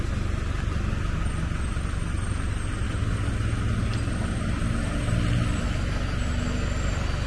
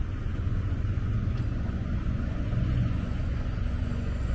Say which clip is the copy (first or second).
second